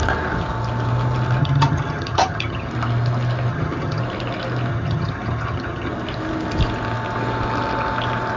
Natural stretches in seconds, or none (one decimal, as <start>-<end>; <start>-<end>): 0.0-1.4; 2.7-3.5; 4.0-4.7; 5.9-8.4